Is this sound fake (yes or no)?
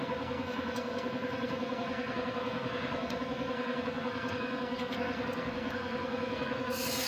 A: yes